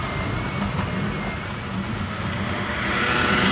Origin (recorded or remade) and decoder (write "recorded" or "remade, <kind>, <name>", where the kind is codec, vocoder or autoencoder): recorded